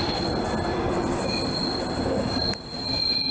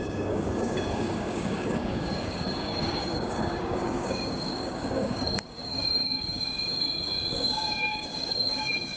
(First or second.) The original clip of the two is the first